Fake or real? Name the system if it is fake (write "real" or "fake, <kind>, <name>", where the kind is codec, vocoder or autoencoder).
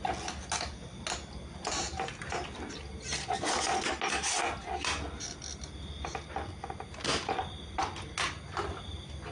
real